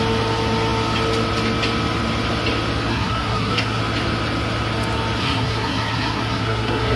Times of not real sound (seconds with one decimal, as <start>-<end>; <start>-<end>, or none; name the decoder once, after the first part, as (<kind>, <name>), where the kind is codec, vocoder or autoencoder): 2.9-3.8 (codec, SNAC); 5.2-7.0